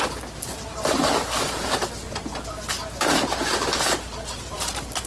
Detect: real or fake real